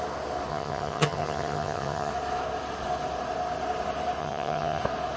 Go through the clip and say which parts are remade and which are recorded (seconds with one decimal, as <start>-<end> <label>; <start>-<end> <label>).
0.0-0.5 recorded; 0.5-2.1 remade; 2.1-4.2 recorded; 4.2-4.8 remade; 4.8-5.2 recorded